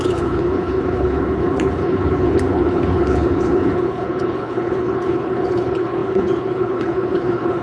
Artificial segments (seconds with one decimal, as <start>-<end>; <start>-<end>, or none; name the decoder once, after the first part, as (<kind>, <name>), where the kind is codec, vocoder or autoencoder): 0.0-7.6 (codec, HILCodec)